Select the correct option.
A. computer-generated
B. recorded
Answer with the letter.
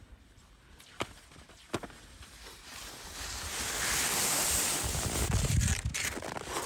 B